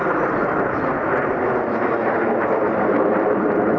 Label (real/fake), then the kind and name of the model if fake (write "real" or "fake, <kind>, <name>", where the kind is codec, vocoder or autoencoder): real